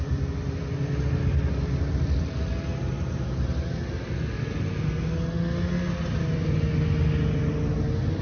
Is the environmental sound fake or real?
real